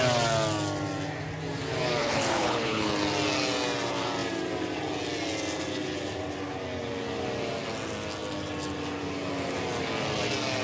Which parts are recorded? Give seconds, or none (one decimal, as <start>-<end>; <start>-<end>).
0.0-2.0; 2.9-10.6